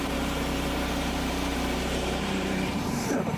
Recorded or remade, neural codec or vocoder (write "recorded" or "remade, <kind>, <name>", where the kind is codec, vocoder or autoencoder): remade, vocoder, BigVGAN v2